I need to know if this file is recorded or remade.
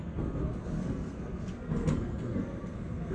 remade